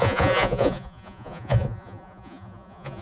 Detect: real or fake fake